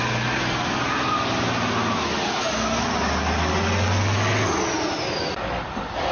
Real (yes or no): yes